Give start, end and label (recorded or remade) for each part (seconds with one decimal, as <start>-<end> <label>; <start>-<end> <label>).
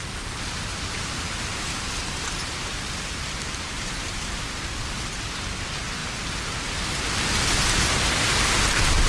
0.0-0.7 recorded; 0.7-4.3 remade; 4.3-9.1 recorded